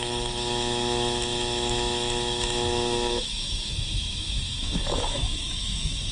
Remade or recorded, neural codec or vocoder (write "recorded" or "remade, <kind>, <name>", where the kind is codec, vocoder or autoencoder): remade, autoencoder, DAC-VAE